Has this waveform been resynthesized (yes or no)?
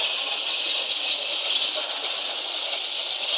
no